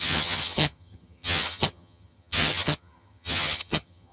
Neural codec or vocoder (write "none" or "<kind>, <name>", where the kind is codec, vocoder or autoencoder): vocoder, HiFi-GAN